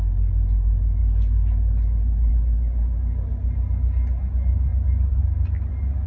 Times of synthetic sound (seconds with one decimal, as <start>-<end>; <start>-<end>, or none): none